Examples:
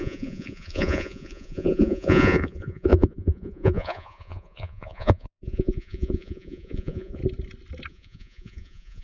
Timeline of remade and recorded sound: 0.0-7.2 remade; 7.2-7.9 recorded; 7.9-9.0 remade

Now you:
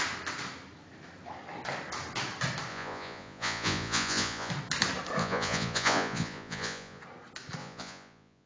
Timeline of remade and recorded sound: 0.0-2.7 recorded; 2.7-4.5 remade; 4.5-5.2 recorded; 5.2-7.0 remade; 7.0-7.6 recorded; 7.6-8.5 remade